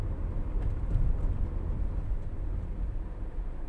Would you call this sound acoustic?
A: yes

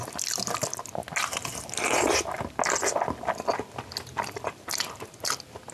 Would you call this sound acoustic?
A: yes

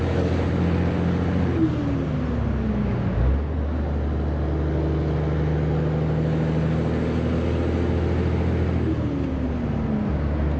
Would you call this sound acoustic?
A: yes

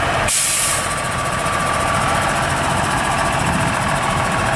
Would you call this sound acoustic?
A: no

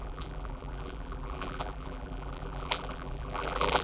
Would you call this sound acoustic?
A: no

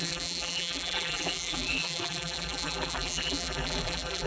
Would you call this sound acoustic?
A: no